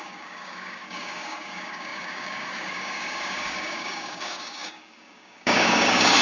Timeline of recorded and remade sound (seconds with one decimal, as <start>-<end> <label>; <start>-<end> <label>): 0.0-6.2 remade